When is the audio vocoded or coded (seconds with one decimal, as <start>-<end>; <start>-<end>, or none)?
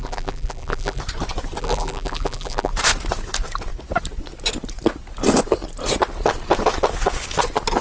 0.0-1.0; 1.6-2.7